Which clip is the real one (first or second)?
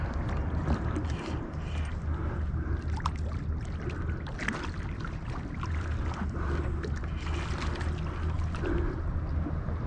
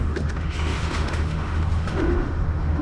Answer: first